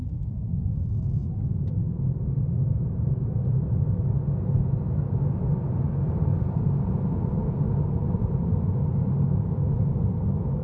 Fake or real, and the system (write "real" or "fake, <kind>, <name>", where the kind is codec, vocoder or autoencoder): real